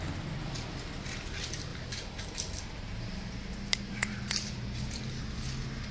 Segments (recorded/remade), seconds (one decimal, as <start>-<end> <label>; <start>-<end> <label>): 0.0-1.7 recorded; 1.7-5.2 remade; 5.2-5.9 recorded